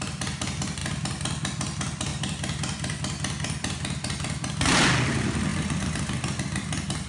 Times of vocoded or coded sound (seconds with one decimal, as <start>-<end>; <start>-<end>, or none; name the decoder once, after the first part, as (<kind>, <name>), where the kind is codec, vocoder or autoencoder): none